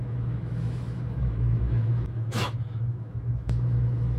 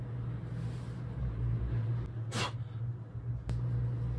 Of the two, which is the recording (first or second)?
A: second